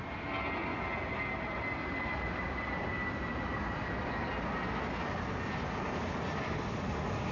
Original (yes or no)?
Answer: yes